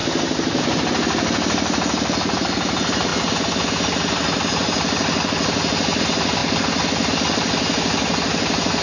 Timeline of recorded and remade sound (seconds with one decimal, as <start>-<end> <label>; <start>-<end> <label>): 0.0-8.8 recorded

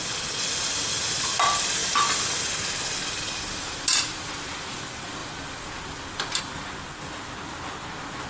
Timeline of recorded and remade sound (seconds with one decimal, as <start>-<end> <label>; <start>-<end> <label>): 0.0-8.3 recorded

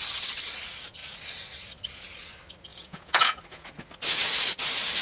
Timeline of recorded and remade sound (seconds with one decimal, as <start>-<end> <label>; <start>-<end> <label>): 0.0-2.7 recorded; 2.7-3.7 remade; 3.7-5.0 recorded

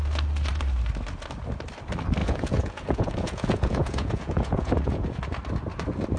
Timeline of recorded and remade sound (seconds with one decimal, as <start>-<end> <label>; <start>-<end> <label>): 0.0-2.2 recorded; 2.2-5.2 remade; 5.2-6.2 recorded

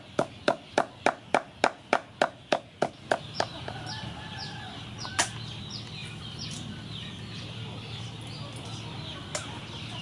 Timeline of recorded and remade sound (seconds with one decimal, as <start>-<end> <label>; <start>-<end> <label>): 0.0-10.0 recorded

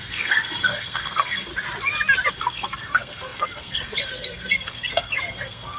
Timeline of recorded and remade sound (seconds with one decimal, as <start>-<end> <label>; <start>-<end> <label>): 0.0-1.5 remade; 1.5-2.3 recorded; 2.3-5.8 remade